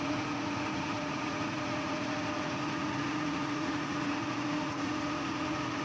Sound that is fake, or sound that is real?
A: fake